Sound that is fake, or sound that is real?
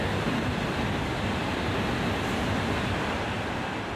real